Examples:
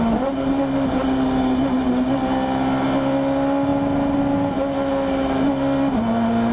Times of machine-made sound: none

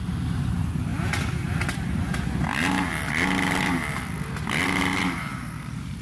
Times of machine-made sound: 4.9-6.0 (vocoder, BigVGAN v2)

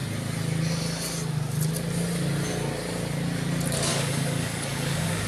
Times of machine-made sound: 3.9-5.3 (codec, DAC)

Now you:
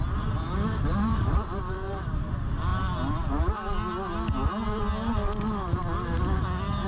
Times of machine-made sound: 1.1-2.2 (vocoder, BigVGAN v2)

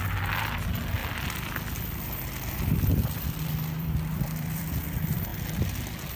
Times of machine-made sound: 1.0-4.7 (vocoder, BigVGAN v2)